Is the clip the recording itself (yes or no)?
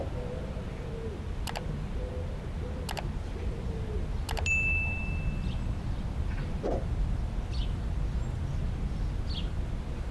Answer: yes